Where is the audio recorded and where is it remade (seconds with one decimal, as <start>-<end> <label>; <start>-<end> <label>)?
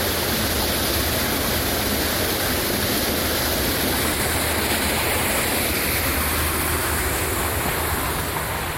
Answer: 0.0-6.8 recorded; 6.8-7.7 remade; 7.7-8.8 recorded